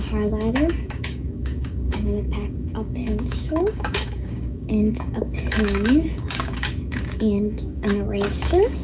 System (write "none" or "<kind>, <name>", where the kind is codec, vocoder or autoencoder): codec, DAC